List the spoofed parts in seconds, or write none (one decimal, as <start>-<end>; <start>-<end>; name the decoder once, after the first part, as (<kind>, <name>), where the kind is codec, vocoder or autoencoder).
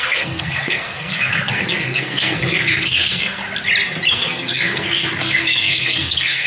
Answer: 0.0-3.4 (codec, SNAC); 4.1-6.5